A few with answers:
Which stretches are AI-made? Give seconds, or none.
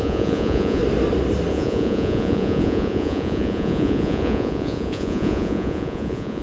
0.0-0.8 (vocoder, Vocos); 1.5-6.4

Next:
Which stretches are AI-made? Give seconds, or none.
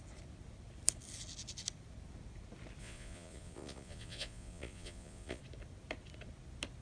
2.8-5.4 (vocoder, Vocos)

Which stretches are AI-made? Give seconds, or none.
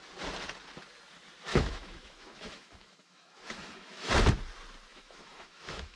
1.5-4.1 (autoencoder, DAC-VAE); 4.9-6.0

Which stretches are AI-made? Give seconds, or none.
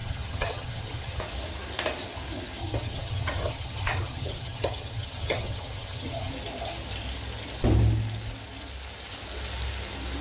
0.0-1.2 (vocoder, HiFi-GAN); 2.6-6.3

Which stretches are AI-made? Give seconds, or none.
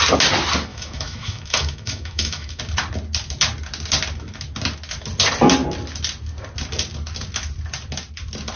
0.7-2.6 (autoencoder, DAC-VAE)